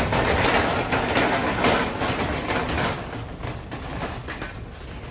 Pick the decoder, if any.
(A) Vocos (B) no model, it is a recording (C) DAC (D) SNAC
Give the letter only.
B